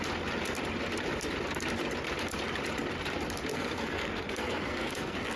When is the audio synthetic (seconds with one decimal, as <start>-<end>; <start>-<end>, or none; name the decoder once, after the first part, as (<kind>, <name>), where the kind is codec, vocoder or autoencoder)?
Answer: 3.5-5.4 (codec, SNAC)